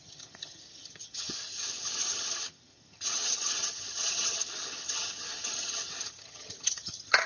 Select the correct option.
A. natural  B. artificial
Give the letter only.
B